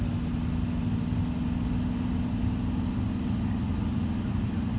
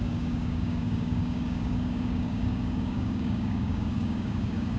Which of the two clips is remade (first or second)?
second